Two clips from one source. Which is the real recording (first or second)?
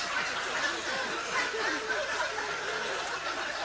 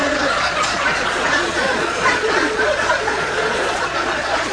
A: first